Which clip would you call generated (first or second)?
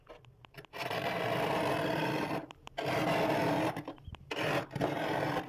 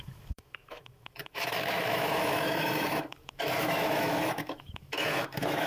second